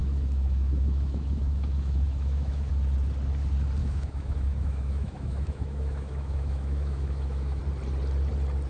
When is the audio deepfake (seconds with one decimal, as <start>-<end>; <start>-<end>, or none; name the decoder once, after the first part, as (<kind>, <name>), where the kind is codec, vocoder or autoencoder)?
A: 0.0-2.7 (autoencoder, DAC-VAE); 3.8-7.6